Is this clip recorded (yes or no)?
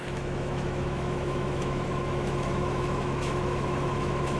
no